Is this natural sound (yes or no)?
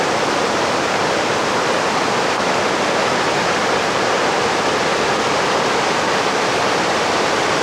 no